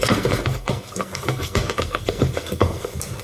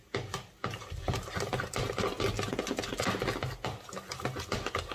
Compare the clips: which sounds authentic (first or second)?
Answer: second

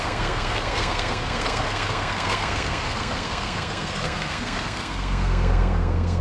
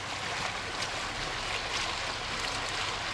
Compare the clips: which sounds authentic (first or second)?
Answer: second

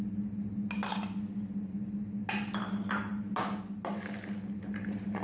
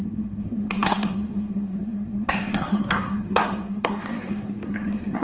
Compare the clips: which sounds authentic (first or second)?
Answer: first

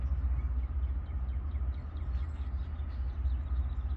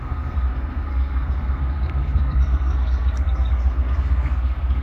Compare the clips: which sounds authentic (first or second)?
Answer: first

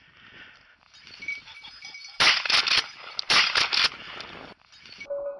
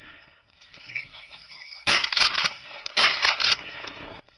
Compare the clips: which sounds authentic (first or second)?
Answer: first